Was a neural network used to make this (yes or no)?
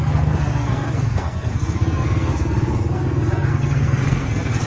yes